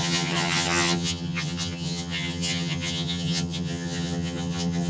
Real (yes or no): no